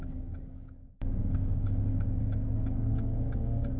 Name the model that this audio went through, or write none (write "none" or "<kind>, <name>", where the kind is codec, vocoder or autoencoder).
codec, DAC